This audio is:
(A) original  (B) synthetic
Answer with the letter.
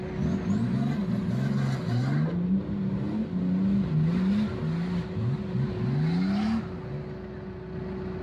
A